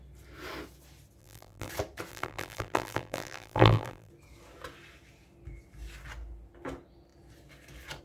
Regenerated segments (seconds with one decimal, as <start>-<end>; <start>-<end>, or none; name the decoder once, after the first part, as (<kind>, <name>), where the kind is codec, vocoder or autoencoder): 1.2-1.7 (vocoder, BigVGAN v2); 2.1-4.1